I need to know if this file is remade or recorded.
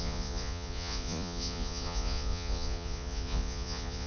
remade